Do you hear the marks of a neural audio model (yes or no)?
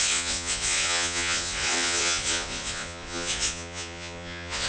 yes